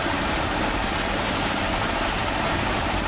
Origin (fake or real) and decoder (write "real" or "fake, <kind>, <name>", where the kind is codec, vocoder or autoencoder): fake, vocoder, BigVGAN v2